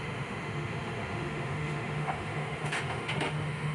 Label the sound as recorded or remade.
remade